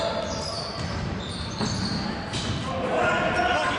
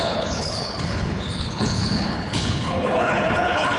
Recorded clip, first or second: first